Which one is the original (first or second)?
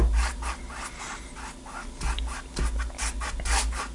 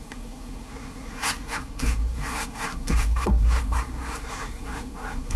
first